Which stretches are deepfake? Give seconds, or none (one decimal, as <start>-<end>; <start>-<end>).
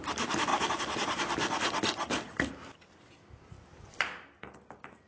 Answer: 0.0-0.5; 3.6-5.1